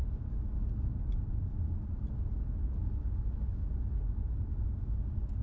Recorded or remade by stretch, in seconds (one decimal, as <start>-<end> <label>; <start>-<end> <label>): 0.0-5.4 recorded